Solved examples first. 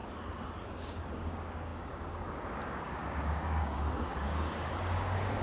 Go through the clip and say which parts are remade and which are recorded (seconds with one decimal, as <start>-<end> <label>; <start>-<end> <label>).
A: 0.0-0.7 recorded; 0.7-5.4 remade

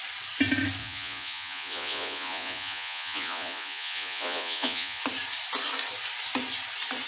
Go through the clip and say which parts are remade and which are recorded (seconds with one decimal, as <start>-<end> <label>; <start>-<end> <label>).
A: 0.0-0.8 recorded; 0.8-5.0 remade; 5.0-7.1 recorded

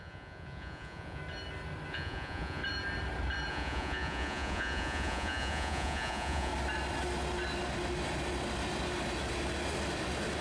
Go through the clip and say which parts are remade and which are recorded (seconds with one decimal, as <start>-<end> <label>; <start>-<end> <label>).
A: 0.0-1.2 remade; 1.2-1.9 recorded; 1.9-2.6 remade; 2.6-3.5 recorded; 3.5-6.5 remade; 6.5-10.4 recorded

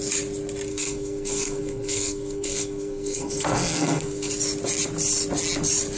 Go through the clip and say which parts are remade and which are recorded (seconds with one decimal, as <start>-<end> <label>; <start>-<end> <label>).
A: 0.0-0.7 recorded; 0.7-4.3 remade; 4.3-6.0 recorded